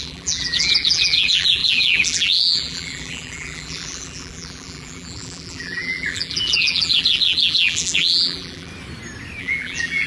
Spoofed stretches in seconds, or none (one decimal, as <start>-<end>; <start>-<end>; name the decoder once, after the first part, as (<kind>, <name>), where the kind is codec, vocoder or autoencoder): 0.0-8.7 (vocoder, BigVGAN v2); 9.4-10.1